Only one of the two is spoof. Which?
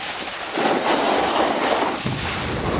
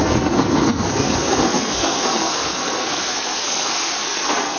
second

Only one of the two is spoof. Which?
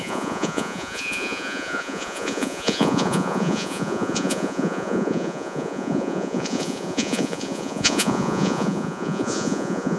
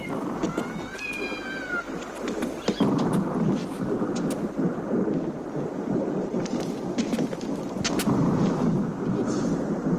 first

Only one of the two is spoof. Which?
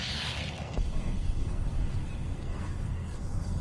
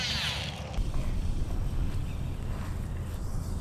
first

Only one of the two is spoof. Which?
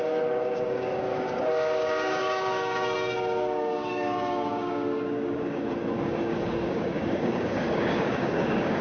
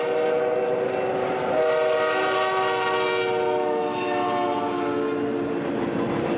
first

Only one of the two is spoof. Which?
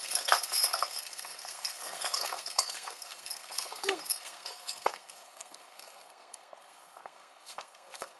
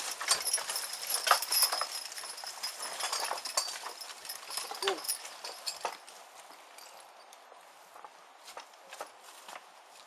first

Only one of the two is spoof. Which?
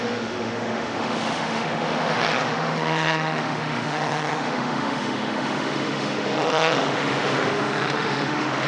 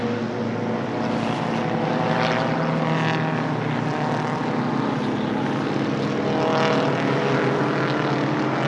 first